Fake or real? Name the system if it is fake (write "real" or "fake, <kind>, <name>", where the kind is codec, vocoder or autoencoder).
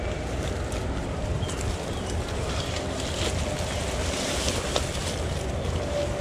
real